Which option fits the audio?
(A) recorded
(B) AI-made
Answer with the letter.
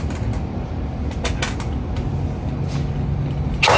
A